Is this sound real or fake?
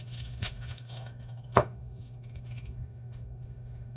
fake